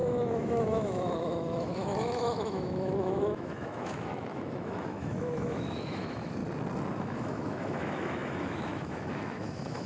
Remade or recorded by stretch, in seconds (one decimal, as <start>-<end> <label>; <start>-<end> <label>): 0.0-6.4 remade; 6.4-7.0 recorded; 7.0-9.9 remade